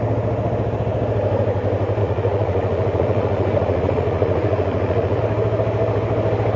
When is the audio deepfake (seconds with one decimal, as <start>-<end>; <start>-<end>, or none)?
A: 2.0-5.2